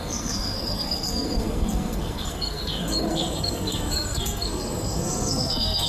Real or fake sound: fake